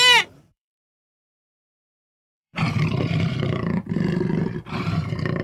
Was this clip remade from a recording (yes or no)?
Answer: yes